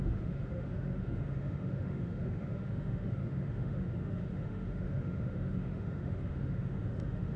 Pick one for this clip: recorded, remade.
remade